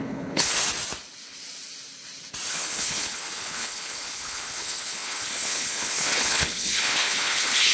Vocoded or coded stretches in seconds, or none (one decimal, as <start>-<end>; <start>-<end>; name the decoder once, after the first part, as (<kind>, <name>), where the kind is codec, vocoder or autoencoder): 0.0-0.6 (codec, HILCodec); 2.5-7.7